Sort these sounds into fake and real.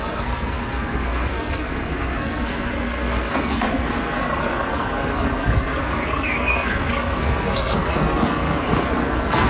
fake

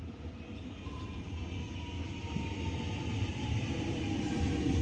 real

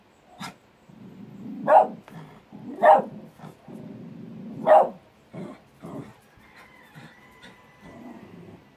real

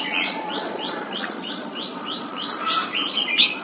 fake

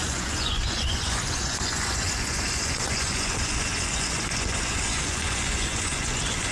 fake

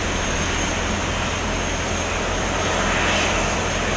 real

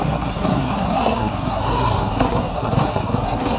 fake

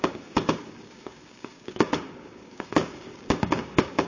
fake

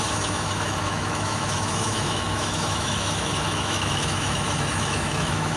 fake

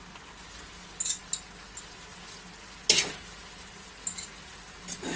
real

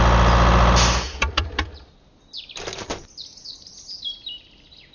real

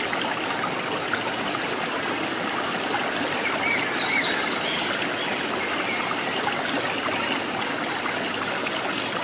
real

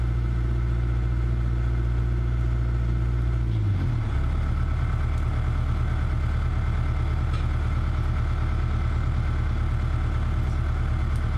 real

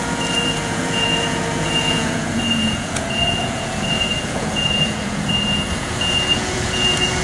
fake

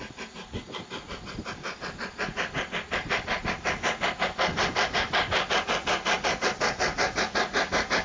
real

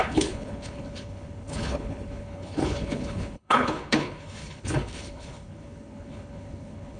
fake